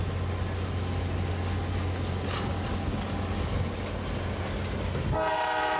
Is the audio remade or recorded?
recorded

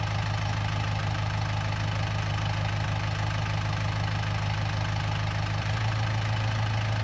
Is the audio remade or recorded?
remade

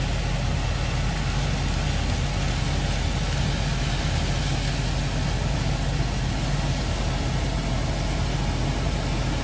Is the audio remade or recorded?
recorded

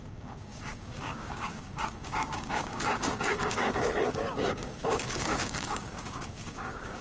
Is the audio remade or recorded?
remade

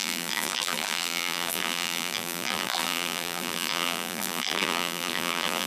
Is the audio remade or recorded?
remade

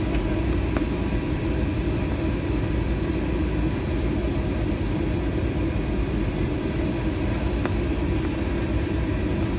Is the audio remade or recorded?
recorded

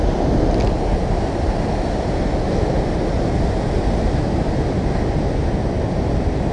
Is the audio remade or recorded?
recorded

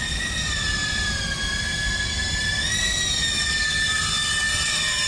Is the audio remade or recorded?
recorded